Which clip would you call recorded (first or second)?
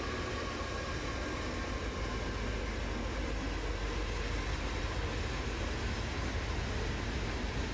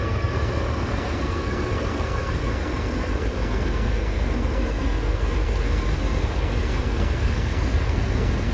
first